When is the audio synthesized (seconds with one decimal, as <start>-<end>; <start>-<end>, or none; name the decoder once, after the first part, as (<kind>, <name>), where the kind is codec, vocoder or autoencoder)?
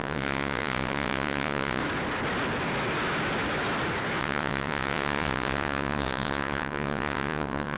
0.0-1.8 (vocoder, WaveNeXt); 4.2-7.8